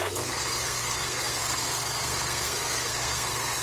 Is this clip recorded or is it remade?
remade